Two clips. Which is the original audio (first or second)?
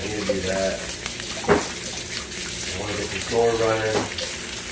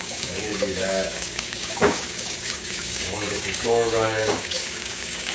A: first